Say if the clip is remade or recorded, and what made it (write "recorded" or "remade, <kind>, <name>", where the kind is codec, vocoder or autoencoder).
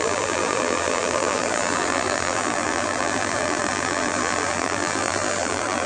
remade, vocoder, BigVGAN v2